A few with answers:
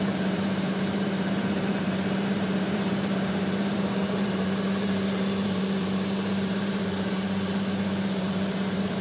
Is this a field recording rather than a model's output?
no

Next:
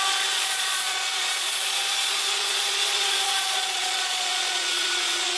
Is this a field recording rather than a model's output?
no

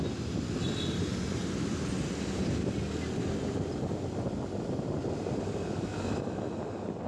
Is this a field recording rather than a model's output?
yes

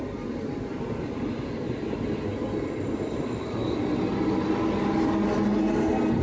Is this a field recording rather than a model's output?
yes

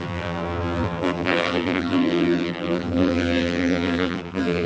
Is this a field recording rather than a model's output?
no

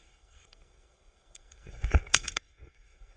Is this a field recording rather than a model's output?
no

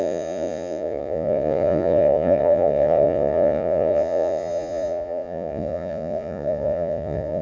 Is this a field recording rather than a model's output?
no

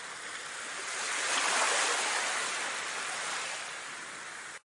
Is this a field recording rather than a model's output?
yes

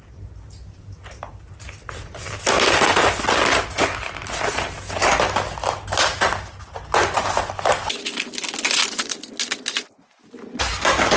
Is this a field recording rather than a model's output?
yes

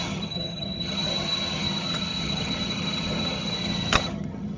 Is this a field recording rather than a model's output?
no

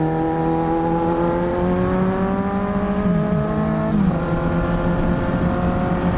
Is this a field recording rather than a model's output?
yes